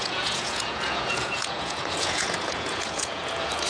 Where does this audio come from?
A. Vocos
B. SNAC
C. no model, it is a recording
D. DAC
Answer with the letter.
A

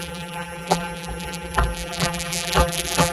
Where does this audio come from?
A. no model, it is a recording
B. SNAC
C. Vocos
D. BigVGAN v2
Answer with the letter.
D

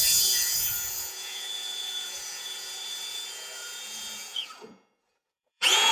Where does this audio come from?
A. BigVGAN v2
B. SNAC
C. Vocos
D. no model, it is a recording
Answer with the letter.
C